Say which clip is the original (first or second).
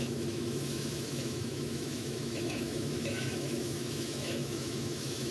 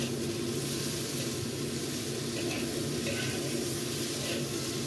second